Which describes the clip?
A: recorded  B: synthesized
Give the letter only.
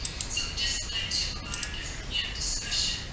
A